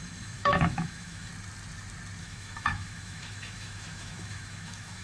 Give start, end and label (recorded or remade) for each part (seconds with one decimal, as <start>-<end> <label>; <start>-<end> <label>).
0.0-1.3 remade; 1.3-2.2 recorded; 2.2-5.0 remade